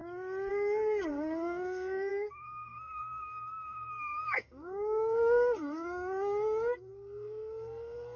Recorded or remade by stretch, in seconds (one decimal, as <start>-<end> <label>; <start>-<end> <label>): 0.0-0.5 recorded; 0.5-8.2 remade